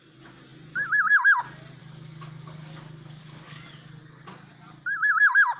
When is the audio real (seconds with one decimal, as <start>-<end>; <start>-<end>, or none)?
0.0-1.8; 3.7-5.6